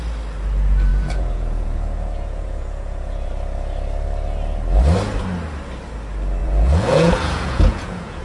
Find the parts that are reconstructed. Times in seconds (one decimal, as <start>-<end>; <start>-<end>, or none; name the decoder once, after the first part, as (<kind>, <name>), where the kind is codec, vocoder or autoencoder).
0.9-3.3 (vocoder, Vocos); 6.4-8.2